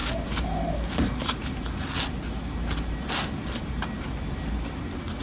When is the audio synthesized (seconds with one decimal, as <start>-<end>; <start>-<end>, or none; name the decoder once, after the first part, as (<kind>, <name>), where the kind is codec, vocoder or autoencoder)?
none